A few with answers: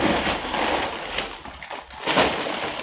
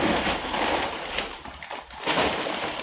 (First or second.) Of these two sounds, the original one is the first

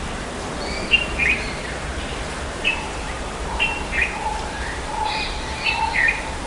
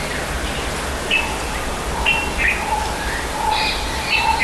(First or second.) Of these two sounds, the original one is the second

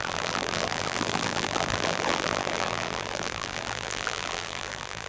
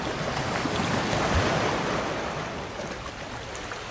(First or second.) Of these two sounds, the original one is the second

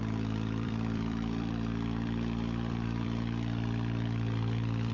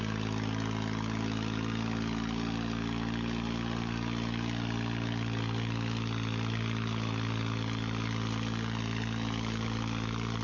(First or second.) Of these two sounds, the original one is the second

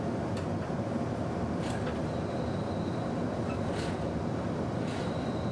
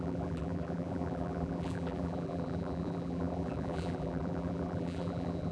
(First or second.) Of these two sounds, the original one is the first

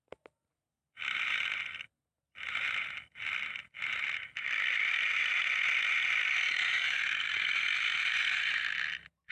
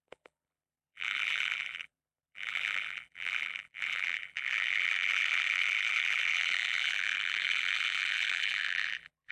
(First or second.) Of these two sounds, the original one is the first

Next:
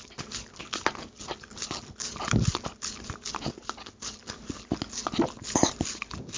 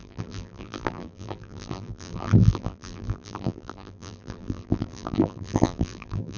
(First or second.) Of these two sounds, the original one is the first